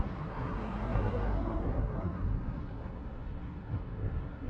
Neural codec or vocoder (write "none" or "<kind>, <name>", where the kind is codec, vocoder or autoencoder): codec, SNAC